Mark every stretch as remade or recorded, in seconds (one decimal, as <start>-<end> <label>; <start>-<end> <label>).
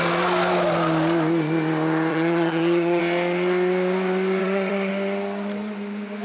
0.0-2.1 recorded; 2.1-3.0 remade; 3.0-4.4 recorded; 4.4-4.9 remade; 4.9-6.2 recorded